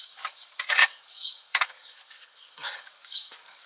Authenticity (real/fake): fake